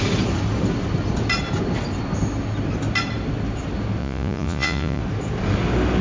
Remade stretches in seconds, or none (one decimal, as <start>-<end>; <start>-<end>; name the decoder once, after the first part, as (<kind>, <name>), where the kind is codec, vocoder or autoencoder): 4.0-5.0 (vocoder, Vocos)